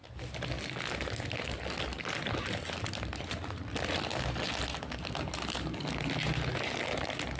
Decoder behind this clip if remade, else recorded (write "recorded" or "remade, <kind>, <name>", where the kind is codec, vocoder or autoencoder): recorded